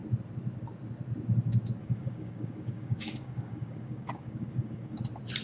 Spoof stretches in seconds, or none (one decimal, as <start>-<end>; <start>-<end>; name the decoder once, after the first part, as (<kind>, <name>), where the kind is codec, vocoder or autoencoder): 1.8-5.0 (codec, DAC)